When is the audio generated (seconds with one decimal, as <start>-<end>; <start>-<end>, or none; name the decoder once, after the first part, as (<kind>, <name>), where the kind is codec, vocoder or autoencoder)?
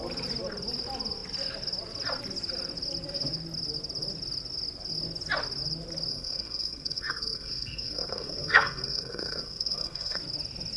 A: 6.1-10.2 (codec, SNAC)